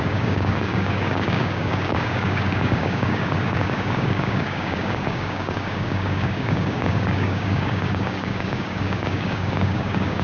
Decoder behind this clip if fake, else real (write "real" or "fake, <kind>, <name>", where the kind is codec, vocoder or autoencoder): fake, codec, DAC